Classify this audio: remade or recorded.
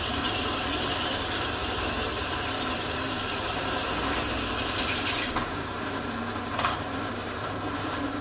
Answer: remade